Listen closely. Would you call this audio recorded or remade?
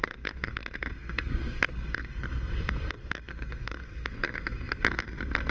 remade